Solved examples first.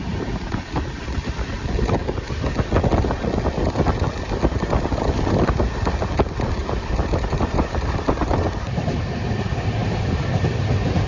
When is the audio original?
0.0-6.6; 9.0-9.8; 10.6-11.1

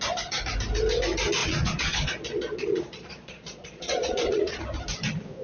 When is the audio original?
0.0-1.4; 4.6-5.4